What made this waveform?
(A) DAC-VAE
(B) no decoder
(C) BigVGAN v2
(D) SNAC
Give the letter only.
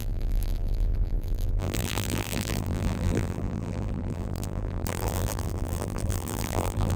C